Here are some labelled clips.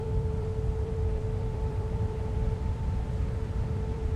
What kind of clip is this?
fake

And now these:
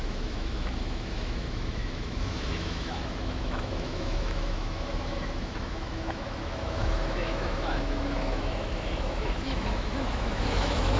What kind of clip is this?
fake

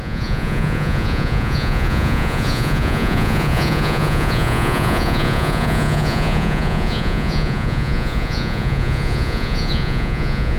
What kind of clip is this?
fake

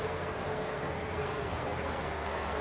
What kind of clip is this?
fake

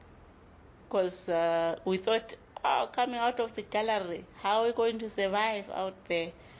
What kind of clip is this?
real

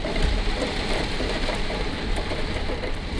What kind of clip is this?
fake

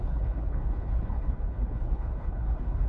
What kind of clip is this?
fake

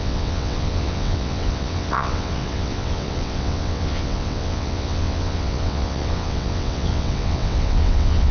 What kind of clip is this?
fake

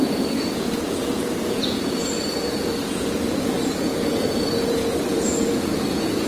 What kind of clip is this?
fake